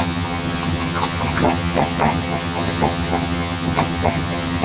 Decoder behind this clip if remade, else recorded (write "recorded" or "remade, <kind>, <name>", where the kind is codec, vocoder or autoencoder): remade, vocoder, HiFi-GAN